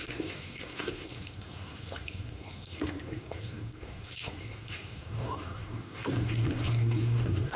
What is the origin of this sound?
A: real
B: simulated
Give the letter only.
B